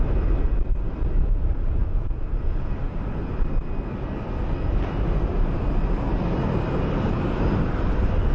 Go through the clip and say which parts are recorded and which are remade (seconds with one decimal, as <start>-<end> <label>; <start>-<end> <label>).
0.0-1.8 recorded; 1.8-2.7 remade; 2.7-8.3 recorded